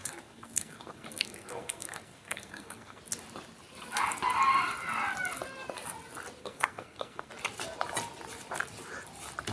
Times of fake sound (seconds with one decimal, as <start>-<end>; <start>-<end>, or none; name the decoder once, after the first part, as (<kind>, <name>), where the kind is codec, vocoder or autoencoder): 0.0-3.0 (codec, SNAC); 6.4-7.3